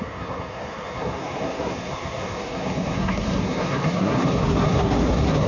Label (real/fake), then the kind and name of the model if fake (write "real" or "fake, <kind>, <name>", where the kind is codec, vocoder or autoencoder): fake, codec, SNAC